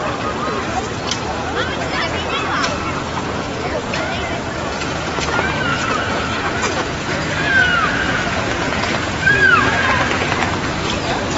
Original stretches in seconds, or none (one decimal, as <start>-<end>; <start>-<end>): 0.0-1.3; 5.2-5.7; 9.9-11.4